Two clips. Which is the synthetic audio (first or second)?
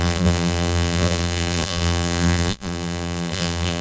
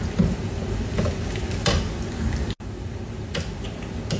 first